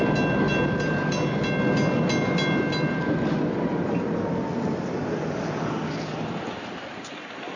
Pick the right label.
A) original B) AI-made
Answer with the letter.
A